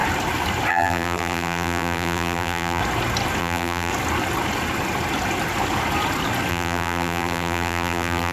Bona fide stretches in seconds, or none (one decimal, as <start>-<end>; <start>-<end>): 0.0-0.7; 2.8-3.4; 3.9-6.5